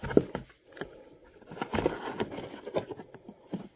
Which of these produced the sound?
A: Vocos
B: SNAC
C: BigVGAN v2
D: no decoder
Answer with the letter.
D